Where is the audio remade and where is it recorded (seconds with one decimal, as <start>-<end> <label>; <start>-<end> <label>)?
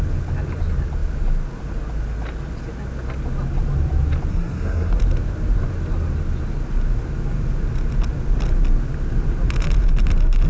0.0-4.3 recorded; 4.3-4.9 remade; 4.9-10.5 recorded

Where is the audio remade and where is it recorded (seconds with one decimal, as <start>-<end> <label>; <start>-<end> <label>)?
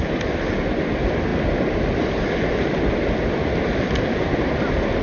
0.0-5.0 recorded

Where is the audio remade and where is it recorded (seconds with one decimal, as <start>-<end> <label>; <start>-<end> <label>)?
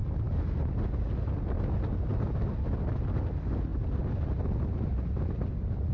0.0-5.9 recorded